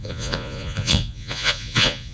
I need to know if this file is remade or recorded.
remade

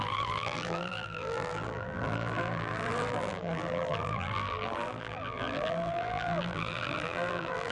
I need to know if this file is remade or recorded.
remade